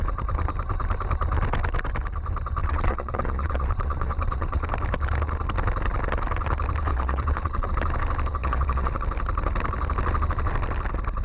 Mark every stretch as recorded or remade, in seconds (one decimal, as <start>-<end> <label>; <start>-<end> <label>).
0.0-2.6 recorded; 2.6-4.7 remade; 4.7-6.9 recorded; 6.9-7.7 remade; 7.7-8.4 recorded; 8.4-9.0 remade; 9.0-11.2 recorded